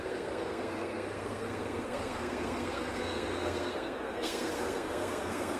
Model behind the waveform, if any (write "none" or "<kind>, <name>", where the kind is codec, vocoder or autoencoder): codec, SNAC